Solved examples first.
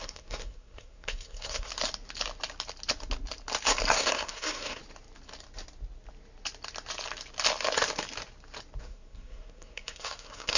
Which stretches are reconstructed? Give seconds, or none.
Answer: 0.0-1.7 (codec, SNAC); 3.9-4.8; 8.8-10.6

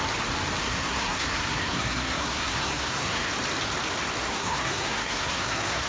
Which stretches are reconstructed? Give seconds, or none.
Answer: 0.6-3.3 (codec, SNAC); 4.3-5.9

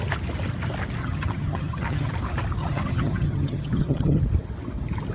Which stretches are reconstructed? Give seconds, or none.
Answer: 1.0-2.1 (vocoder, HiFi-GAN); 2.6-4.2

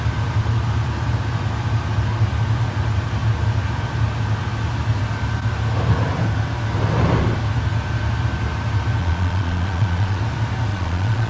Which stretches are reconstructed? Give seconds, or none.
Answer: 9.0-10.2 (vocoder, Vocos); 10.7-11.3